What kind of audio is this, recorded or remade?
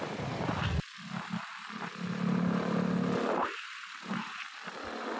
recorded